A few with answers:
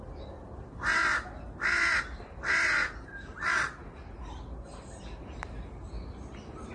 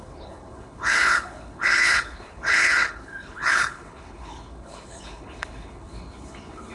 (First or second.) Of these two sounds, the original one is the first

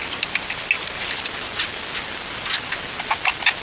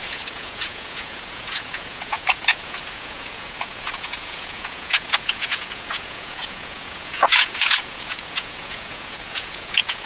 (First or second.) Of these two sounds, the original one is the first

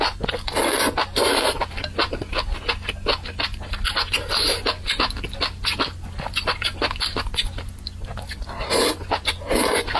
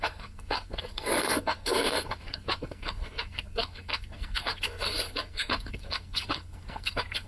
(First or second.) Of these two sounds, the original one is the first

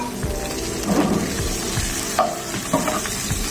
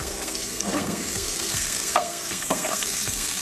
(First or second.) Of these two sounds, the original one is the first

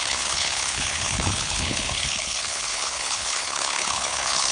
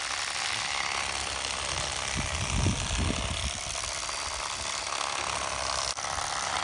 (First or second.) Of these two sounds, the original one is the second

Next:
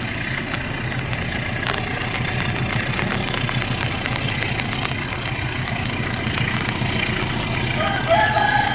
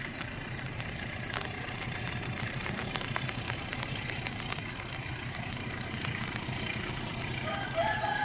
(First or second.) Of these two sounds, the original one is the first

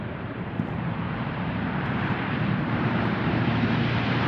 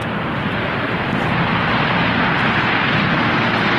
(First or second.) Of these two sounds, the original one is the second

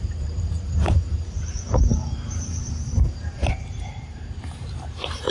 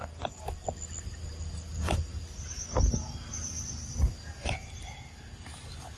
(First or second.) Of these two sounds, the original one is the second